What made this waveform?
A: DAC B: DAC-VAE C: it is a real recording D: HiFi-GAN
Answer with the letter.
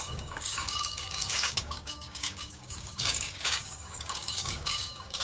A